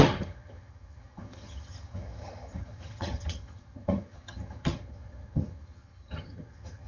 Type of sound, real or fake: fake